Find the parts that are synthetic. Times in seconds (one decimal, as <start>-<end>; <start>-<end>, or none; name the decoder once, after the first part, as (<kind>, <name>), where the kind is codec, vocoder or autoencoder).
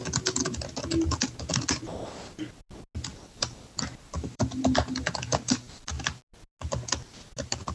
3.1-5.9 (vocoder, BigVGAN v2)